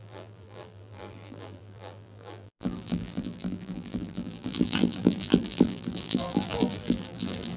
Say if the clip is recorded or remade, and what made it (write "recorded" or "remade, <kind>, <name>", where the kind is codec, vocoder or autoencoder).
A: remade, vocoder, BigVGAN v2